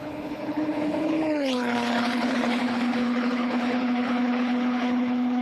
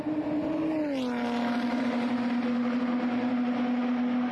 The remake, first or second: first